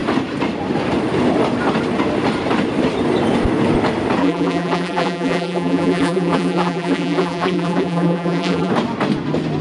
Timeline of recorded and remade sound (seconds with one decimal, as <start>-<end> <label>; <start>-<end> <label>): 0.0-4.2 recorded; 4.2-8.7 remade; 8.7-9.6 recorded